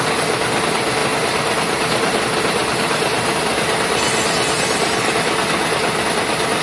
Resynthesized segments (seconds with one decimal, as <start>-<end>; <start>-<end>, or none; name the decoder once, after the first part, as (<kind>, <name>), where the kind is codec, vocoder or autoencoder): 1.0-2.2 (vocoder, BigVGAN v2); 2.6-3.4

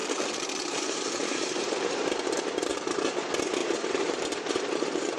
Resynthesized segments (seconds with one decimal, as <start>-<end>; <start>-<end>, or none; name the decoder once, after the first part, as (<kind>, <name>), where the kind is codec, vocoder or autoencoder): 0.0-3.1 (vocoder, BigVGAN v2); 3.6-5.2